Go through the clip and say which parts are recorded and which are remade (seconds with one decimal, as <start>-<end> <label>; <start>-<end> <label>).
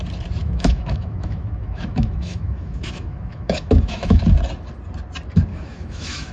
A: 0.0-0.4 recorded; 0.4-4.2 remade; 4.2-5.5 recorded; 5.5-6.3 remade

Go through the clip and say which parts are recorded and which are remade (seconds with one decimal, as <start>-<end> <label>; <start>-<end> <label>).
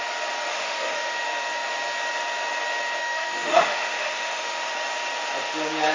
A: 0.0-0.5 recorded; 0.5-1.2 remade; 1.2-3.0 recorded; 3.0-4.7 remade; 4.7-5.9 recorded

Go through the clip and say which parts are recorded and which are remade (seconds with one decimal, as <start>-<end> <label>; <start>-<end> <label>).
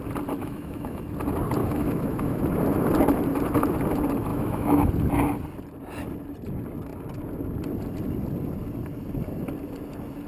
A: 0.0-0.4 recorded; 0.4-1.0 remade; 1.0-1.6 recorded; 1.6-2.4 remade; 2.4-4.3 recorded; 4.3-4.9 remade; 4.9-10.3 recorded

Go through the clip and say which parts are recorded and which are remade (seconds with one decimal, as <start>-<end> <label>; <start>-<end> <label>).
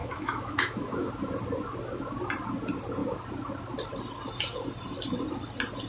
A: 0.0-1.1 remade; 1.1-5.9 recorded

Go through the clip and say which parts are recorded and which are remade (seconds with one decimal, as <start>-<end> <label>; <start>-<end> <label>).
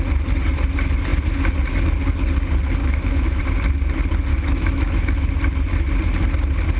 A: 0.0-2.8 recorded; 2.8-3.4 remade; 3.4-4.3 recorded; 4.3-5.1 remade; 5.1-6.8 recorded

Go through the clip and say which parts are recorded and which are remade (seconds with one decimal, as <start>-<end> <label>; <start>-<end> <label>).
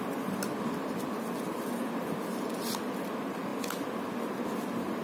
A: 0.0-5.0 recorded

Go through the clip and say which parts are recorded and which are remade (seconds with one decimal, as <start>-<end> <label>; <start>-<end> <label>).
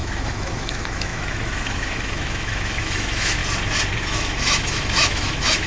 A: 0.0-3.4 remade; 3.4-4.0 recorded; 4.0-5.7 remade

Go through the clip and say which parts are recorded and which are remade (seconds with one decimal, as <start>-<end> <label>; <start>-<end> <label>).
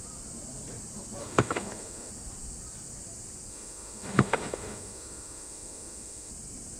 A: 0.0-1.2 recorded; 1.2-2.1 remade; 2.1-3.5 recorded; 3.5-6.3 remade; 6.3-6.8 recorded